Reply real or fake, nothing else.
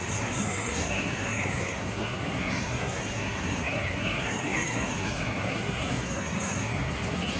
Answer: fake